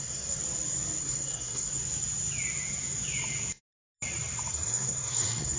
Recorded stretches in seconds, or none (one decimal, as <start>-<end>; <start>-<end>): 0.4-1.0; 1.7-4.5